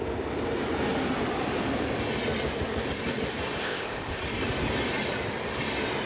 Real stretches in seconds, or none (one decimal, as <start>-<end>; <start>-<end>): 0.0-3.6; 4.2-6.1